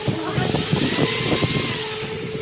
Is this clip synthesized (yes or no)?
no